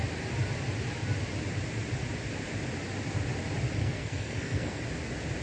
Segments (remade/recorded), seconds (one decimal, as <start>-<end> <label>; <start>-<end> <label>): 0.0-3.8 recorded; 3.8-4.8 remade; 4.8-5.4 recorded